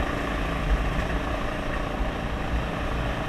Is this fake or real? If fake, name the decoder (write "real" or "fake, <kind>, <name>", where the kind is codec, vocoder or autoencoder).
real